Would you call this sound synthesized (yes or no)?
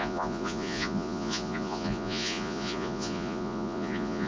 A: yes